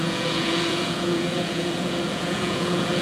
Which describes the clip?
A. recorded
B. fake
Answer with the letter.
B